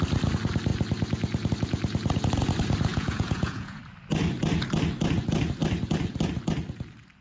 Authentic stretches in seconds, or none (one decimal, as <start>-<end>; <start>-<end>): 0.0-2.9; 3.8-7.2